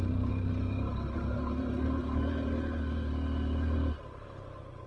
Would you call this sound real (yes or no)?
yes